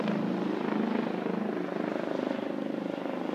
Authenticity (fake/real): real